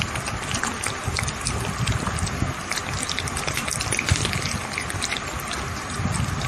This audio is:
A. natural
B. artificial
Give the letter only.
A